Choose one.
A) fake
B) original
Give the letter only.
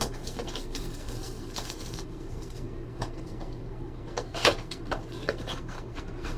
A